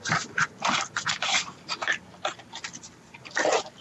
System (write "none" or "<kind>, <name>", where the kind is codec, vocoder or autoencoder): none